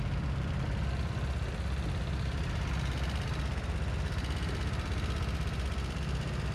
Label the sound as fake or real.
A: real